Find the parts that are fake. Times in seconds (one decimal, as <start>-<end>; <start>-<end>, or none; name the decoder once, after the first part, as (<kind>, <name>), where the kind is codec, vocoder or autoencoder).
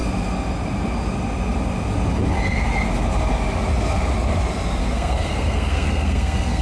4.8-6.6 (codec, SNAC)